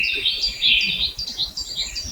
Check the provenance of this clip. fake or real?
real